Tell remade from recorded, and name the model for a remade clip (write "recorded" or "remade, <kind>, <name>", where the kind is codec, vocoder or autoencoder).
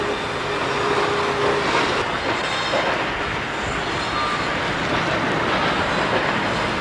recorded